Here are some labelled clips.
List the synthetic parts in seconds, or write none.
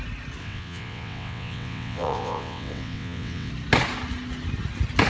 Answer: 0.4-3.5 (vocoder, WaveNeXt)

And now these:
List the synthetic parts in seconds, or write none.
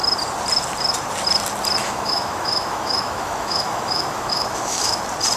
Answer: 1.8-5.0 (autoencoder, DAC-VAE)